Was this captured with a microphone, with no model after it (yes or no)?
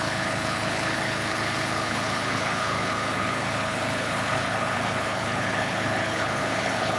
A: no